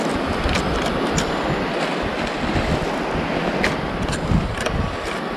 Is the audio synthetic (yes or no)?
no